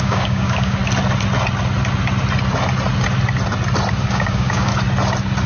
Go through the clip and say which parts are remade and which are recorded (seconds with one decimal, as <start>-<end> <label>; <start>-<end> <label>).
0.0-0.8 remade; 0.8-4.1 recorded; 4.1-4.7 remade; 4.7-5.5 recorded